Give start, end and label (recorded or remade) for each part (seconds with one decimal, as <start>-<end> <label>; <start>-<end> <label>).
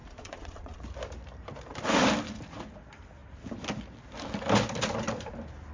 0.0-0.8 remade; 0.8-5.7 recorded